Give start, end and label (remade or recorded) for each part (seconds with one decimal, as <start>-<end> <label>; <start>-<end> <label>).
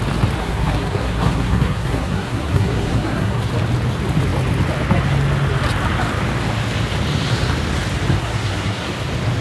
0.0-0.4 recorded; 0.4-3.5 remade; 3.5-8.2 recorded; 8.2-8.9 remade; 8.9-9.4 recorded